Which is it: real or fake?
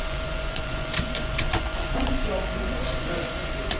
fake